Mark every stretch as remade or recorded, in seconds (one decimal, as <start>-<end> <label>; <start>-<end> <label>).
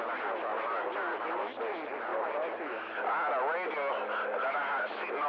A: 0.0-5.3 recorded